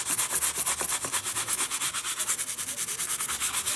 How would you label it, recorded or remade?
recorded